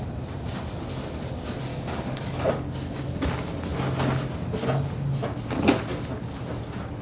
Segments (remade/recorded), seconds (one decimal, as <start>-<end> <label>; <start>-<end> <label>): 0.0-1.7 recorded; 1.7-2.5 remade; 2.5-7.0 recorded